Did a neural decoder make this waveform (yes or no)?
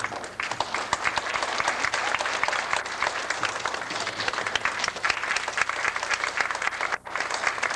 no